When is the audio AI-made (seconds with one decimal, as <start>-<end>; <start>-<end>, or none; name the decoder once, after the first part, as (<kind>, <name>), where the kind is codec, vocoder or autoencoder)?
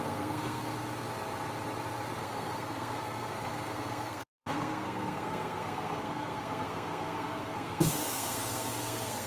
0.0-0.7 (codec, SNAC); 2.2-9.3